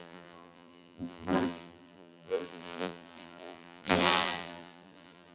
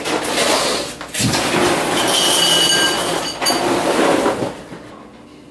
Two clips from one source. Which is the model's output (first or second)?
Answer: first